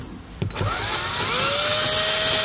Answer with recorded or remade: recorded